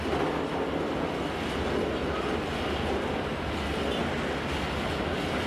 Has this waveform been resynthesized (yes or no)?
no